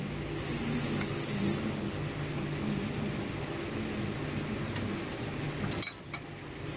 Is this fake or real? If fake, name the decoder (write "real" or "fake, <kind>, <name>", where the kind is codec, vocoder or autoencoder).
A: real